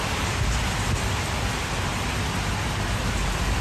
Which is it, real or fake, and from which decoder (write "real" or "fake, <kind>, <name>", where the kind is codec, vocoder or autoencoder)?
real